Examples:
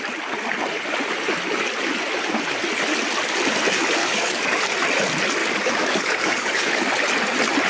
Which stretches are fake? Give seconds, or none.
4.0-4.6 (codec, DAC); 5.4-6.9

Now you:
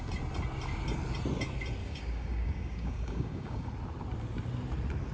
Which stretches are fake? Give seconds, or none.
1.8-3.7 (codec, DAC)

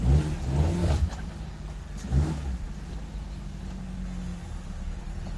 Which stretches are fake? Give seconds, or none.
0.8-2.6 (codec, DAC)

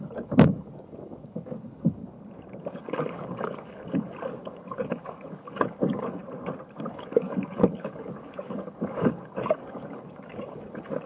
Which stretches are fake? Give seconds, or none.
0.0-2.0 (codec, DAC); 2.6-6.2; 6.9-11.1

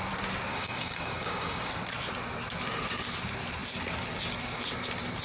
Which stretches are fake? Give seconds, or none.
0.5-1.7 (codec, DAC)